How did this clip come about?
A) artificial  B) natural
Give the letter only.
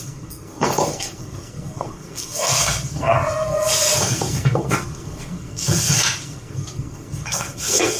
A